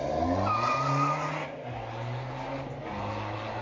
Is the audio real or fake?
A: real